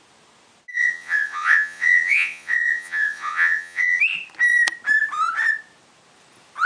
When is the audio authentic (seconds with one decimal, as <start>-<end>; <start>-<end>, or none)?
0.0-0.7; 4.0-6.7